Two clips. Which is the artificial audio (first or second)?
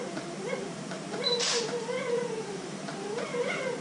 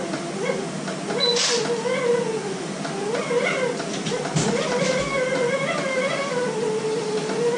first